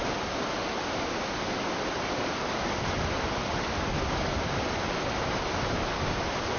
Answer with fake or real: real